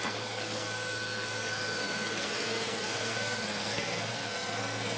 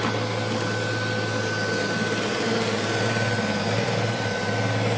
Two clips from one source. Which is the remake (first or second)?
first